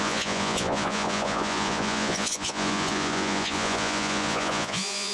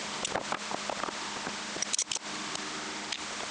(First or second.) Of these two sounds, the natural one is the second